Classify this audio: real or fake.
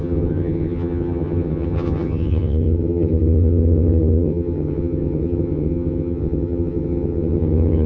fake